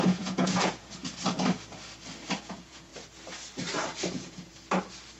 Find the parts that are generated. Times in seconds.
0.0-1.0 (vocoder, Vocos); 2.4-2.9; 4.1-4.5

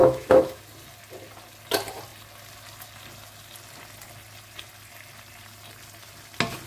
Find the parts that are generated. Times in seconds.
0.0-0.6 (autoencoder, DAC-VAE)

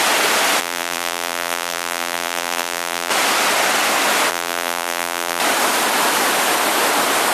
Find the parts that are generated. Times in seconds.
0.6-3.1 (vocoder, BigVGAN v2); 4.3-5.4

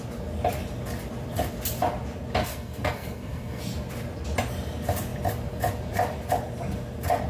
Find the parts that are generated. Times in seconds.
2.4-3.6 (codec, SNAC)

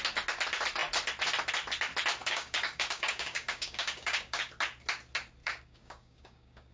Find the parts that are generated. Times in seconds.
2.2-4.5 (codec, DAC); 5.4-6.7